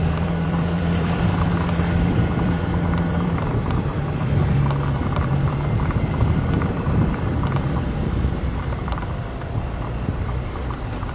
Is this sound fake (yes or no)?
yes